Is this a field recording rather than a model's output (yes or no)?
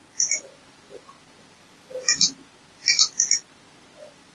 yes